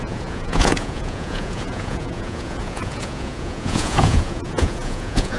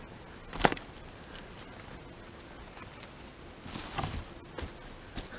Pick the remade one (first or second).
first